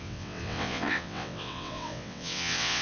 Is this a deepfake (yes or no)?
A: yes